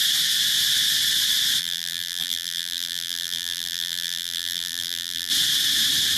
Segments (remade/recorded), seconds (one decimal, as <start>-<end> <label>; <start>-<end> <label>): 0.0-1.6 recorded; 1.6-5.3 remade; 5.3-6.2 recorded